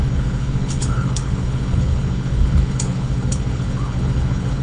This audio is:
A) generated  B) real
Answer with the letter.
A